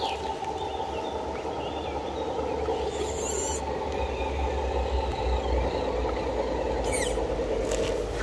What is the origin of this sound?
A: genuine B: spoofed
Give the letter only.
A